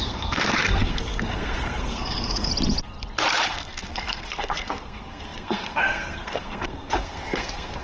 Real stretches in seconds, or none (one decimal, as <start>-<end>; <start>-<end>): 2.5-3.5